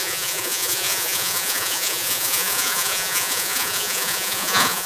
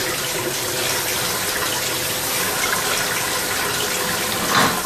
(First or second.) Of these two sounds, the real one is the second